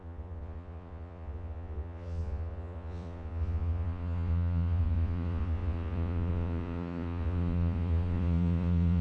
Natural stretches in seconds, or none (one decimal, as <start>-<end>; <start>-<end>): none